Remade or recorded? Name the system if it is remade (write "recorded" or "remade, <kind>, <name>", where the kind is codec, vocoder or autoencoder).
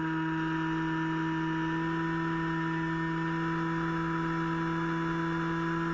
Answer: recorded